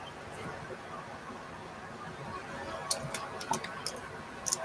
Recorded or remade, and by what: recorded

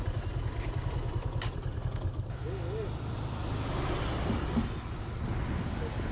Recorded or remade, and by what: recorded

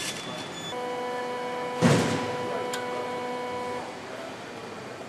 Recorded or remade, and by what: recorded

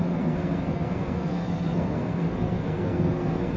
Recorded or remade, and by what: remade, codec, SNAC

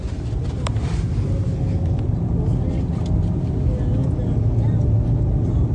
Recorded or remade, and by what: recorded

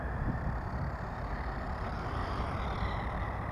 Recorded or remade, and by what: recorded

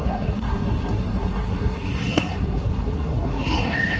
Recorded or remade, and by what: remade, codec, SNAC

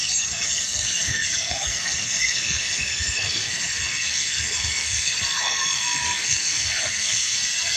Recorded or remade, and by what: remade, codec, SNAC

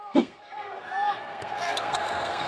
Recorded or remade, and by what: remade, codec, SNAC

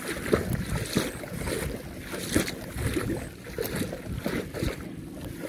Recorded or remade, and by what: recorded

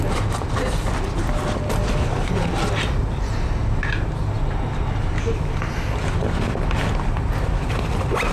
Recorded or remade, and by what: recorded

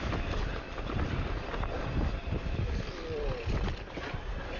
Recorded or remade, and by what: recorded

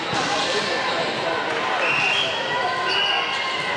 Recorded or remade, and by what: recorded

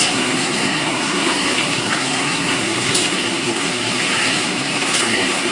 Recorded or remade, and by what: remade, codec, SNAC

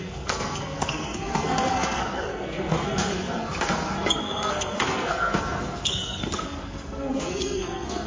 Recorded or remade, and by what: remade, codec, SNAC